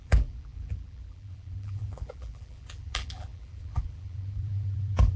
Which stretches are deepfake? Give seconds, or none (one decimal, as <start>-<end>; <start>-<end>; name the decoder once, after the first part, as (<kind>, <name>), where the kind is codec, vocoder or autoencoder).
0.0-5.2 (vocoder, BigVGAN v2)

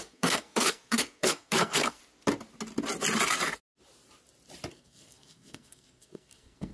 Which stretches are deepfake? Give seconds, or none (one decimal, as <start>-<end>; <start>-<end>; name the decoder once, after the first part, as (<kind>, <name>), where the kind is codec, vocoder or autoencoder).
0.0-2.0 (codec, SNAC); 4.7-6.7

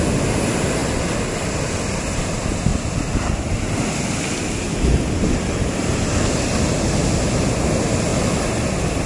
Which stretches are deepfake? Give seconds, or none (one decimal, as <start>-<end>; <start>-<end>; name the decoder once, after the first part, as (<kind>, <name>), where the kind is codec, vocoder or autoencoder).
none

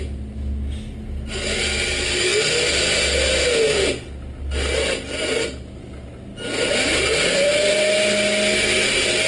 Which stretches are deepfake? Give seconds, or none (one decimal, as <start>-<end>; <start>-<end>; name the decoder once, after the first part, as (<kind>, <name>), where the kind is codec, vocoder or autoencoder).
none

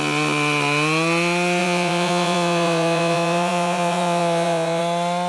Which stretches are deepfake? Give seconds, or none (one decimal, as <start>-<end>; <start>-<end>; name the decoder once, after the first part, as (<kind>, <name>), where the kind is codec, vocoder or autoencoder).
1.6-4.8 (vocoder, Vocos)